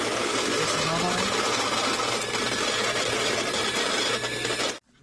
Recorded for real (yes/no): yes